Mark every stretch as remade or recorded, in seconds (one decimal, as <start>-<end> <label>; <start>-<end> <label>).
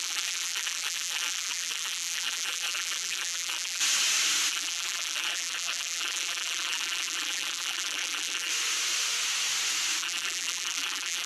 0.0-3.8 remade; 3.8-4.5 recorded; 4.5-8.5 remade; 8.5-10.0 recorded; 10.0-11.3 remade